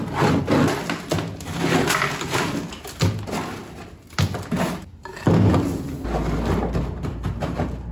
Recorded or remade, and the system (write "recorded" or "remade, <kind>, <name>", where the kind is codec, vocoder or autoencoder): recorded